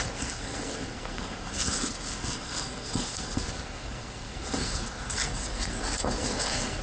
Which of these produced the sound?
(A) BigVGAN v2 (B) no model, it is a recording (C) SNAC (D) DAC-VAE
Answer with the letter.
C